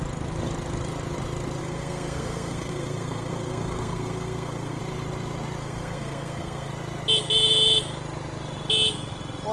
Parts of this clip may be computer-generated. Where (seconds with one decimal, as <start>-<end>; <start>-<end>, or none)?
1.6-4.8; 5.6-6.7